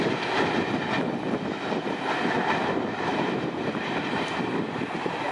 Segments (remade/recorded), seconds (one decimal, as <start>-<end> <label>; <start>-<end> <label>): 0.0-3.1 recorded; 3.1-4.0 remade; 4.0-5.3 recorded